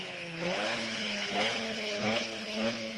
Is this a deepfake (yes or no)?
yes